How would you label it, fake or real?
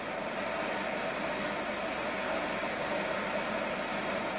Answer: real